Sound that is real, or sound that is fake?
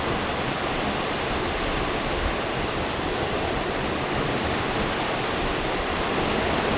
real